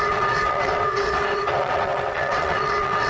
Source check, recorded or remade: remade